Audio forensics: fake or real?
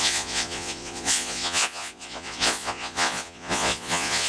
fake